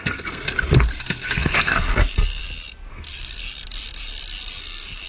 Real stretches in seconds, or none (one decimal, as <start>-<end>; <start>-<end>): 0.4-1.0; 2.4-2.9; 3.4-4.6